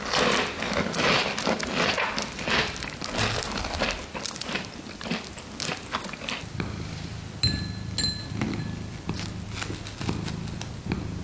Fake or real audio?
real